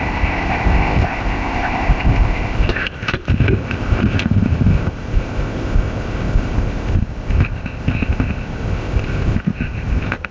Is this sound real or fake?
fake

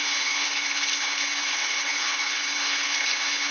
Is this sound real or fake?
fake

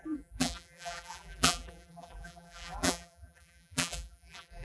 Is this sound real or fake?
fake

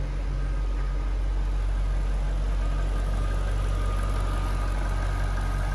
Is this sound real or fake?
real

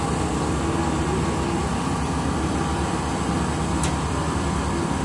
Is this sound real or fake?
real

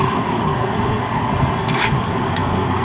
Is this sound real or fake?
fake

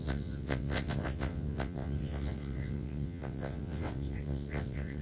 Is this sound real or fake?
fake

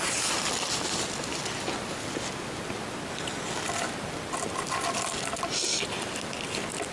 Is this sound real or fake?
real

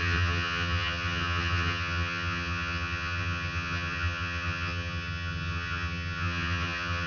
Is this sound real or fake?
fake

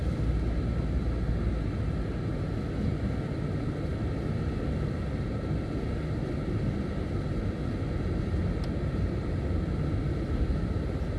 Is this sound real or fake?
real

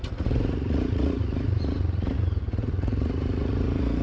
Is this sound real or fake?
fake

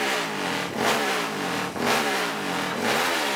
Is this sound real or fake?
real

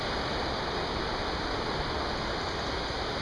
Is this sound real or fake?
real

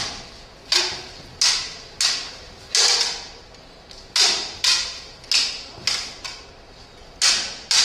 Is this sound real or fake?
real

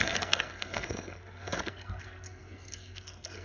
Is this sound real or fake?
fake